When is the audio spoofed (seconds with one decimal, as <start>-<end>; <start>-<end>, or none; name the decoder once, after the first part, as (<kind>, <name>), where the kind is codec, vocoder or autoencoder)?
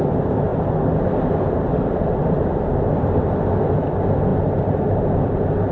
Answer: 0.5-3.9 (vocoder, BigVGAN v2); 4.3-5.7